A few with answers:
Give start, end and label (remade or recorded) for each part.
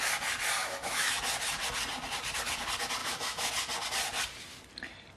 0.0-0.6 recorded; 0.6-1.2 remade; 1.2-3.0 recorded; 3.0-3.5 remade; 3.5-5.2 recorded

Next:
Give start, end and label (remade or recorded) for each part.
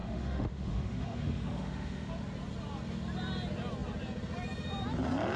0.0-2.1 remade; 2.1-5.4 recorded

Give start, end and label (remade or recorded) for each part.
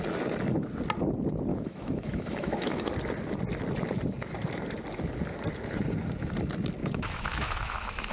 0.0-1.5 recorded; 1.5-2.9 remade; 2.9-6.8 recorded; 6.8-8.1 remade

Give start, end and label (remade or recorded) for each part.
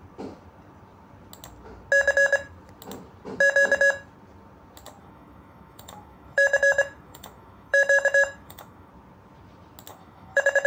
0.0-5.0 recorded; 5.0-8.9 remade; 8.9-9.9 recorded; 9.9-10.7 remade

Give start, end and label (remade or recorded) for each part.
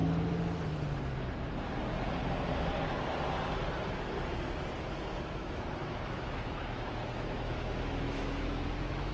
0.0-5.2 recorded; 5.2-9.1 remade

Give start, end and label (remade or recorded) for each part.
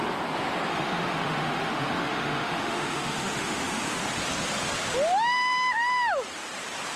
0.0-0.7 recorded; 0.7-3.9 remade; 3.9-7.0 recorded